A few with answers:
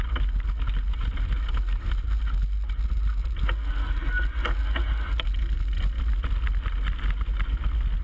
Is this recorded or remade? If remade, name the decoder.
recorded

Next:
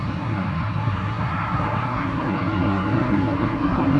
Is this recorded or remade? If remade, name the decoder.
remade, codec, SNAC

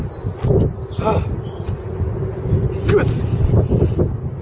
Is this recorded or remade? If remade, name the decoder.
recorded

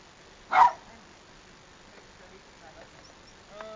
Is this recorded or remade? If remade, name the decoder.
recorded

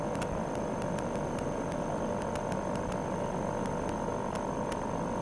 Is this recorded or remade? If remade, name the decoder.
recorded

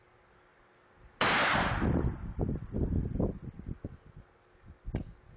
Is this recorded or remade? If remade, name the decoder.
recorded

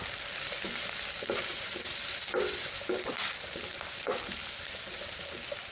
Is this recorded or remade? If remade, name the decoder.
recorded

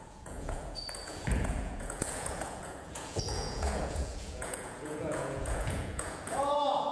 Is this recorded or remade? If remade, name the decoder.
remade, vocoder, Vocos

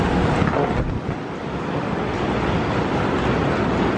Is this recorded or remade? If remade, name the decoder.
recorded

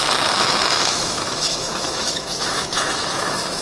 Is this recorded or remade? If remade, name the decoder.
remade, autoencoder, DAC-VAE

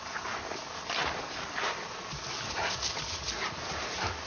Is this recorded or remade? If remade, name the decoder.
recorded